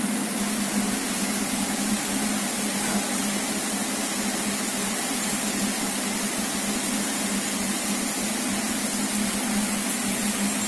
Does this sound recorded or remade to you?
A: recorded